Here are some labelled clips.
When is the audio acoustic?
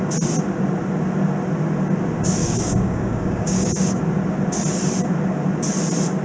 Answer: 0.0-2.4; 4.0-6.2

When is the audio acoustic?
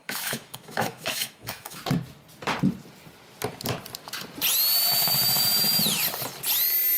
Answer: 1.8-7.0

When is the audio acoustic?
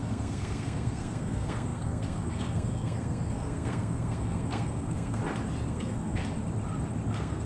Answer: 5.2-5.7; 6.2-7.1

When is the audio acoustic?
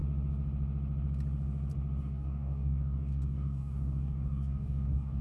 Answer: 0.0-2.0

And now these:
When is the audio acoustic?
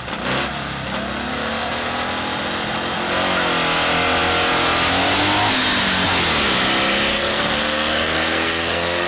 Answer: 0.0-7.1